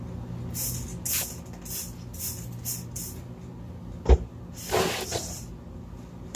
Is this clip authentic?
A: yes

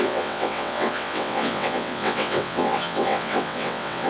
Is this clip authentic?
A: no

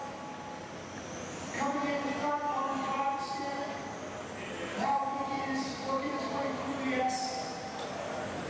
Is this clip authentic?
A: yes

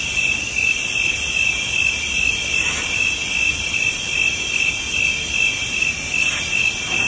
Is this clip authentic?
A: yes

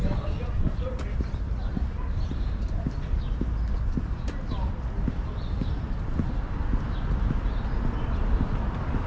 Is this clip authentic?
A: yes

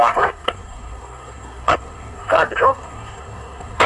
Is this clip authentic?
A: no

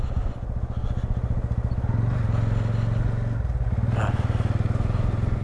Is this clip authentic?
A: yes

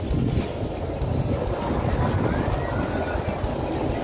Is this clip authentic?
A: yes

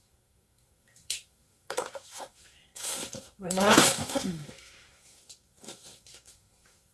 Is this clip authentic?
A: no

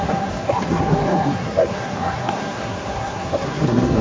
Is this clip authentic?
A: no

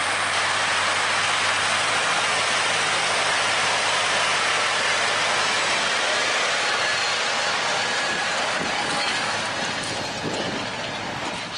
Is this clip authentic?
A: yes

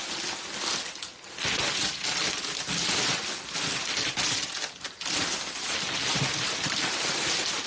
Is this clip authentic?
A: yes